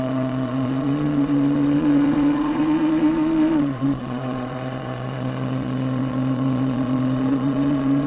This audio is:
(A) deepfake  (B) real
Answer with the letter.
A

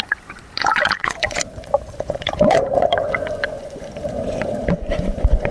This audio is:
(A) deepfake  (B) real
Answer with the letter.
A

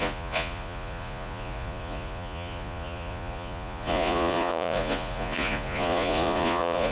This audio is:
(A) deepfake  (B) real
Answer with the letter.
A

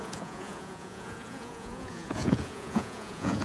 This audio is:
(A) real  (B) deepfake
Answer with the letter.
B